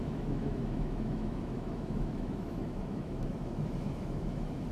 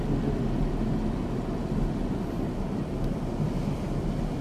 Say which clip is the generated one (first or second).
first